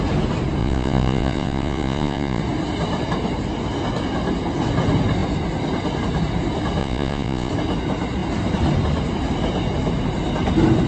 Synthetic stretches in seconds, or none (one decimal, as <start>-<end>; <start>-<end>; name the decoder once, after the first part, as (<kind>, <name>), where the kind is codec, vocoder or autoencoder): 0.6-2.4 (vocoder, Vocos); 6.8-7.5